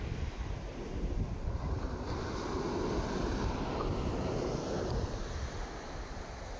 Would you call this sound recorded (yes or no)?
yes